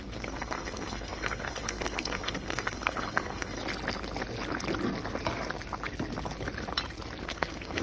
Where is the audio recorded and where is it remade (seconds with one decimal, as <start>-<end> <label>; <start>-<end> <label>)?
0.0-3.6 remade; 3.6-7.2 recorded; 7.2-7.8 remade